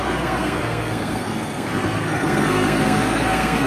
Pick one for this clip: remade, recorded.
remade